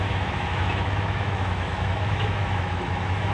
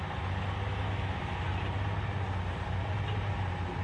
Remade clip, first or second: first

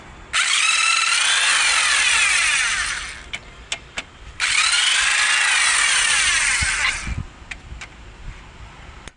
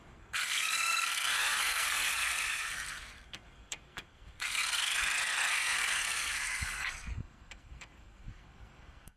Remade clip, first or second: second